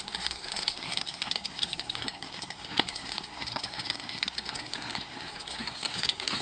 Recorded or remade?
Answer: remade